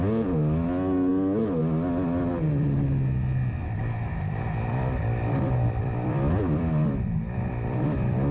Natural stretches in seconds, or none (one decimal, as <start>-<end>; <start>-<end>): 0.0-3.6